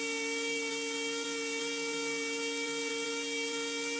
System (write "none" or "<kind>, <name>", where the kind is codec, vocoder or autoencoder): none